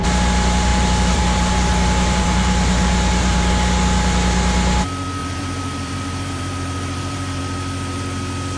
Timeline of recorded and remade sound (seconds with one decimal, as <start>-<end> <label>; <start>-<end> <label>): 0.0-0.7 recorded; 0.7-3.5 remade; 3.5-5.2 recorded; 5.2-7.4 remade; 7.4-8.6 recorded